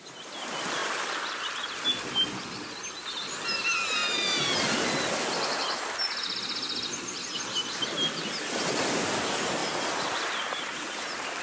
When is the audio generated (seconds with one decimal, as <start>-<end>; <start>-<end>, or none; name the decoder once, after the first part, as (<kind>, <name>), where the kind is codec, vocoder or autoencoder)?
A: none